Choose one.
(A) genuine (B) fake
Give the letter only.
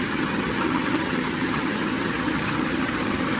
B